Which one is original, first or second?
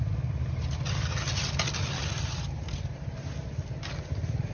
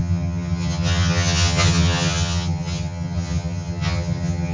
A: first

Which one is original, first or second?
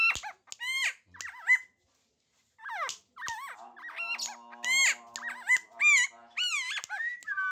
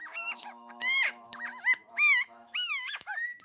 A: first